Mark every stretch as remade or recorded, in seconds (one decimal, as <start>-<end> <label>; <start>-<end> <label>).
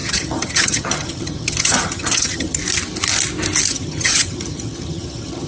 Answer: 0.0-2.6 remade; 2.6-3.7 recorded; 3.7-5.5 remade